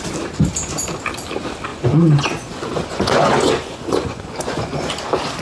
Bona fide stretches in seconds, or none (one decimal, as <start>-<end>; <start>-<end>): 0.0-1.7; 4.9-5.4

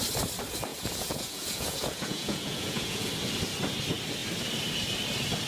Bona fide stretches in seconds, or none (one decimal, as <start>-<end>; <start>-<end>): 0.0-0.7; 3.1-5.5